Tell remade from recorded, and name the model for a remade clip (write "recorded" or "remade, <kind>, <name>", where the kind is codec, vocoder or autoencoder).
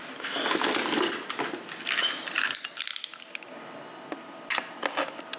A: recorded